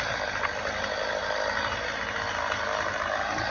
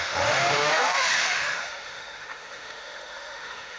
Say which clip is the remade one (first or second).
second